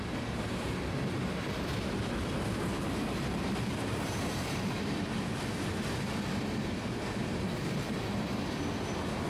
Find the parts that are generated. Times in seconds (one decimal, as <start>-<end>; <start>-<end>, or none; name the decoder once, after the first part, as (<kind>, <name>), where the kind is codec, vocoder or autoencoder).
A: 2.7-5.1 (vocoder, BigVGAN v2); 7.2-8.4